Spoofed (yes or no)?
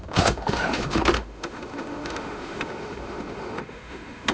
yes